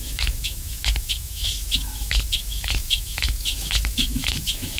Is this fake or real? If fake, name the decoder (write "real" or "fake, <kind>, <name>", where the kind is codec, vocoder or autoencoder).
fake, autoencoder, DAC-VAE